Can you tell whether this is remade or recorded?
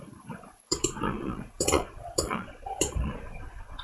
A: remade